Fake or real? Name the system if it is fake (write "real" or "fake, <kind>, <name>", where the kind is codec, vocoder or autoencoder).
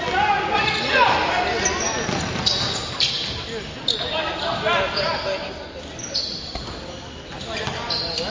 real